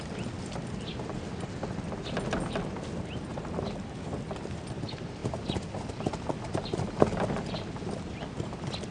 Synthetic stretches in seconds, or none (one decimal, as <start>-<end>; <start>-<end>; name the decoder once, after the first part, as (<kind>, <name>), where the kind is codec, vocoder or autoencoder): none